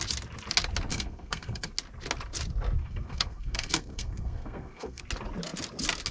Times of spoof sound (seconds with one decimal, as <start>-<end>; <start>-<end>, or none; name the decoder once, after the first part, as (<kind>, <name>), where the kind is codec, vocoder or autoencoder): 0.9-1.7 (codec, SNAC); 2.8-5.0